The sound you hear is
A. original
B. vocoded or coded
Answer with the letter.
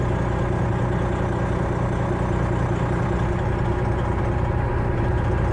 A